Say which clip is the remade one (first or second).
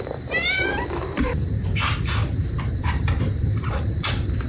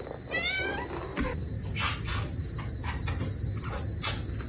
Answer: first